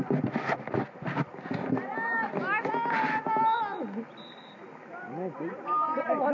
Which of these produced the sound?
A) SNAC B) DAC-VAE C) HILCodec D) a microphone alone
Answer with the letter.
D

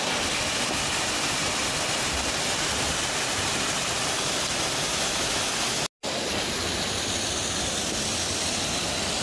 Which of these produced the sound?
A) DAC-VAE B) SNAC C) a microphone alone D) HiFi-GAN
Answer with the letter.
C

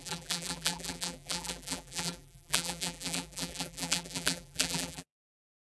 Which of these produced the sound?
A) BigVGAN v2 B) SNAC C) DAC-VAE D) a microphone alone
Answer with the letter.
A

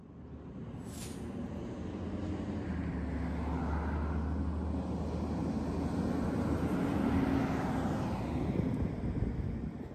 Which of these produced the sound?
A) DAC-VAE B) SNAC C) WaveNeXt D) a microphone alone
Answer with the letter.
D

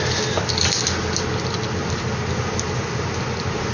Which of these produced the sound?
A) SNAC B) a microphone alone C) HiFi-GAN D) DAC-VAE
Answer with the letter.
B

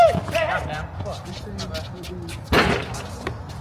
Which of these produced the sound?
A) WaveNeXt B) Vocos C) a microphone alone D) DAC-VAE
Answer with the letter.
C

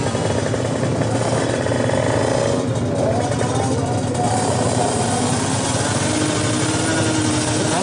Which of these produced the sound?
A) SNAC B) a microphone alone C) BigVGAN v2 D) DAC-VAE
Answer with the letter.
B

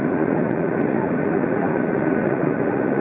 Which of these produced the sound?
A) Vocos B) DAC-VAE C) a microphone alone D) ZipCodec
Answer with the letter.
A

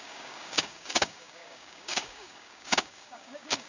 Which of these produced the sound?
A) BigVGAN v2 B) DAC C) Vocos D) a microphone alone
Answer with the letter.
B